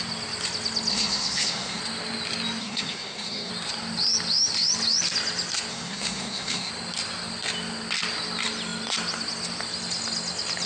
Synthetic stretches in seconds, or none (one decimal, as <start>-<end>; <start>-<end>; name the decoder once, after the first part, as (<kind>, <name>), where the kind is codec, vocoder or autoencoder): 0.9-1.8 (codec, SNAC); 2.6-3.5; 5.7-6.7